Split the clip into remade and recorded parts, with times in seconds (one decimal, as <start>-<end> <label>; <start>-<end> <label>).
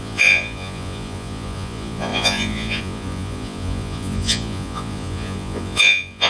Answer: 0.0-6.3 remade